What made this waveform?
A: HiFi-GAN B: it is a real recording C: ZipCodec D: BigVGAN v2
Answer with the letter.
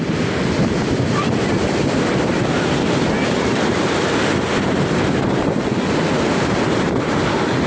D